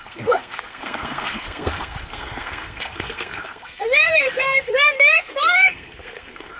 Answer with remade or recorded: remade